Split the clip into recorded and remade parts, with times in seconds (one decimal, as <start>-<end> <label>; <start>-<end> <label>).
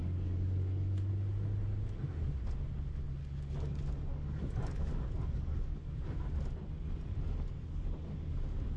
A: 0.0-1.1 remade; 1.1-3.2 recorded; 3.2-6.2 remade; 6.2-7.1 recorded; 7.1-8.8 remade